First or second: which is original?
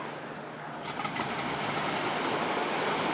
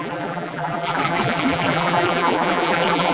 first